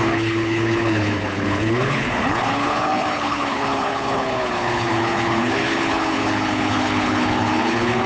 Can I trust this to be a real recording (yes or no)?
no